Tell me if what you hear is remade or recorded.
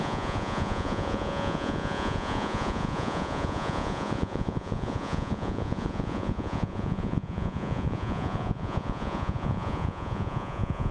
remade